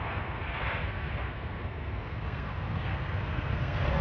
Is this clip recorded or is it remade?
remade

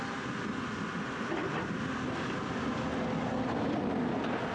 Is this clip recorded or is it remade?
recorded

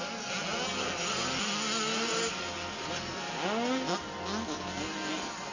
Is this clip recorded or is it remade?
recorded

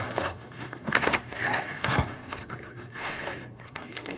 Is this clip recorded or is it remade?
remade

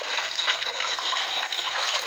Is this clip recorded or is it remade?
remade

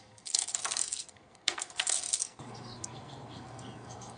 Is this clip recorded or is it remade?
remade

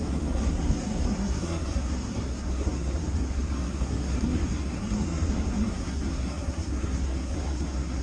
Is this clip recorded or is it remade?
remade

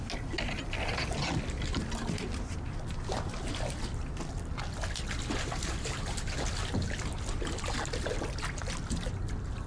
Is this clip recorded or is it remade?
recorded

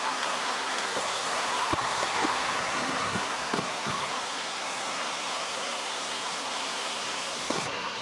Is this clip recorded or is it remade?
remade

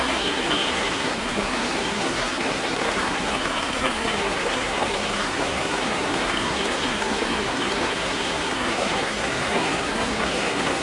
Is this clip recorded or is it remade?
remade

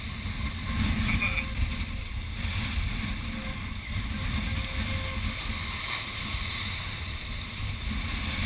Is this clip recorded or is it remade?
recorded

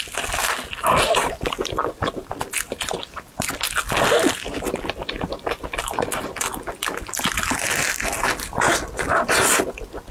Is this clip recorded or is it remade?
recorded